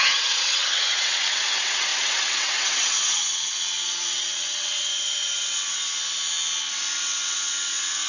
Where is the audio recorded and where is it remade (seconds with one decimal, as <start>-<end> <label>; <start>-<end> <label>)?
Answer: 0.0-5.8 remade; 5.8-7.0 recorded; 7.0-8.1 remade